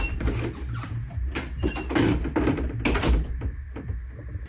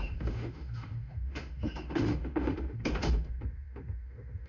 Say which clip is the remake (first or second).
second